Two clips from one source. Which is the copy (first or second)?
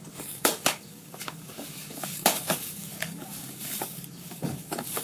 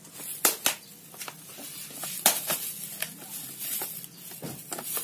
first